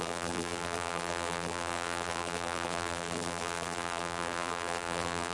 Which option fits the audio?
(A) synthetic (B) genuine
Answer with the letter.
A